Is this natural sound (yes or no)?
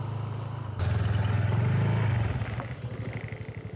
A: yes